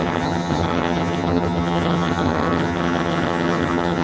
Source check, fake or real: fake